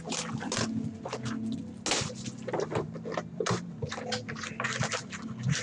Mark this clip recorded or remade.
recorded